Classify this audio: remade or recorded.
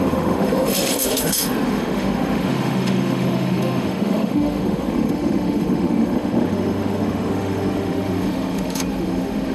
remade